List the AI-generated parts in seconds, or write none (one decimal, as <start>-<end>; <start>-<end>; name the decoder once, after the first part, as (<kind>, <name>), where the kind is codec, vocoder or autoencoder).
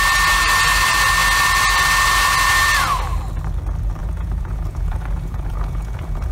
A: 4.0-6.3 (vocoder, Vocos)